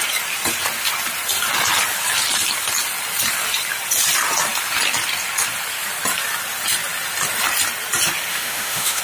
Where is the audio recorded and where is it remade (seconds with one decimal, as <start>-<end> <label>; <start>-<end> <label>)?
0.0-8.3 recorded; 8.3-9.0 remade